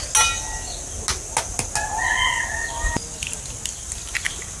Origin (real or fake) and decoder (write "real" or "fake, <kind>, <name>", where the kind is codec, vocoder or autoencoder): real